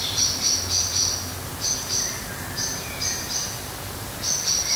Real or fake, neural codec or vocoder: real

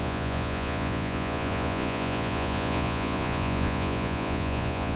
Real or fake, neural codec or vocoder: fake, vocoder, Vocos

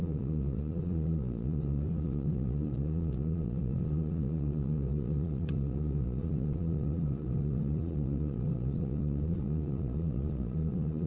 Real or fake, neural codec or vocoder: fake, vocoder, Vocos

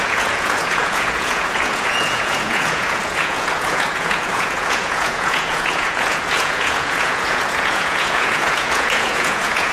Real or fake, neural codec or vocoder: fake, vocoder, Vocos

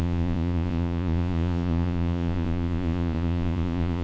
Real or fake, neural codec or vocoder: fake, vocoder, Vocos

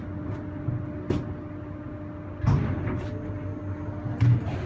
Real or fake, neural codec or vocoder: real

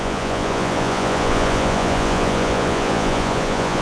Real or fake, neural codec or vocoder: fake, vocoder, Vocos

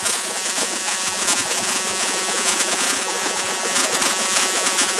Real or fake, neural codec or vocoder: fake, vocoder, Vocos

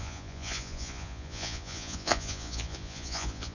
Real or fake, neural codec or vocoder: fake, vocoder, Vocos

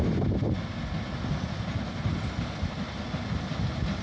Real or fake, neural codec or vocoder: real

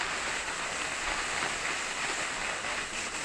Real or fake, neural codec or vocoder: real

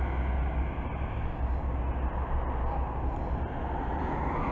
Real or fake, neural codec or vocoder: real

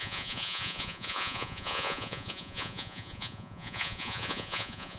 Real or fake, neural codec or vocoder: fake, vocoder, Vocos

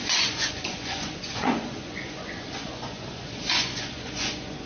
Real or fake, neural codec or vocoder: fake, vocoder, Vocos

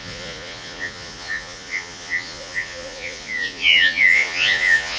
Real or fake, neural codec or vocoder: fake, vocoder, Vocos